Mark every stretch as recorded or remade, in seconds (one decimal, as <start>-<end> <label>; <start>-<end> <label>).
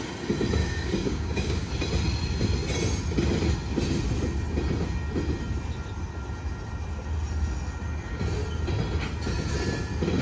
0.0-0.6 recorded; 0.6-1.7 remade; 1.7-10.2 recorded